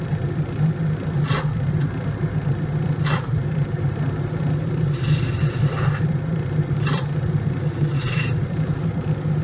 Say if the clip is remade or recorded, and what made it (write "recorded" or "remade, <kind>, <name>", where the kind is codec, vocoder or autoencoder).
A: remade, vocoder, BigVGAN v2